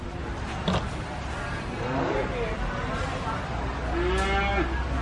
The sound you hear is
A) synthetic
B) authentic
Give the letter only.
B